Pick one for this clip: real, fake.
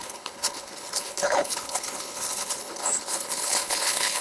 fake